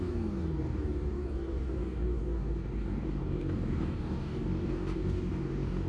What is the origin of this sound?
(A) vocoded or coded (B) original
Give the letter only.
A